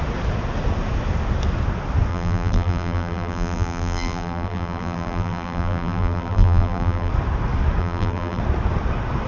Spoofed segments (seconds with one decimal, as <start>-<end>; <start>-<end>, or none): 2.1-7.1; 7.8-8.4